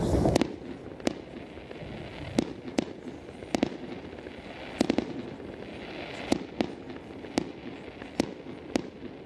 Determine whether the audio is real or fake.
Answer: real